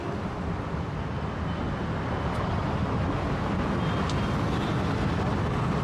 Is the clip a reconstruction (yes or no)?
no